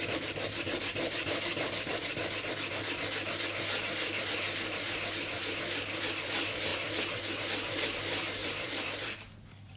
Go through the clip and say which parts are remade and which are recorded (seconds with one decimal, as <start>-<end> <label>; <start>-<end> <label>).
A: 0.0-0.5 recorded; 0.5-2.3 remade; 2.3-8.4 recorded; 8.4-9.8 remade